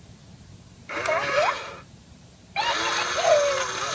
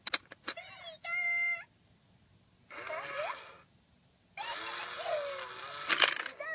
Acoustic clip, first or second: second